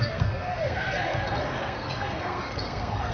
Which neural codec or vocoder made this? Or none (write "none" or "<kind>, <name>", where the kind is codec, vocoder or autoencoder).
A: codec, SNAC